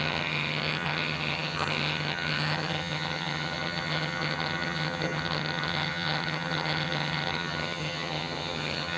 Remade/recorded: remade